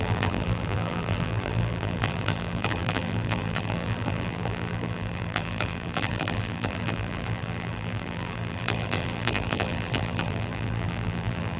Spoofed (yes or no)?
yes